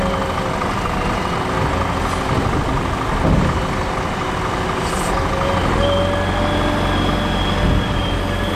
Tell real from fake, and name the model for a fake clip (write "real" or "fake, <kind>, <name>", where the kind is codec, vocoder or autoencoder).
real